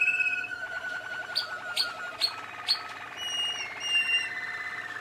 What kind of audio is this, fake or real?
real